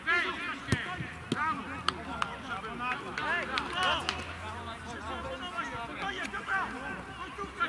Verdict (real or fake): real